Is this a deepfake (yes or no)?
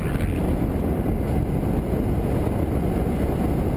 no